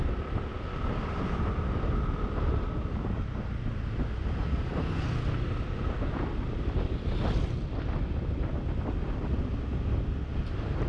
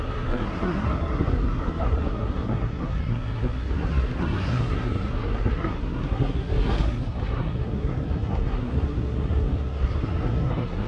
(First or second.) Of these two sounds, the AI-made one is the second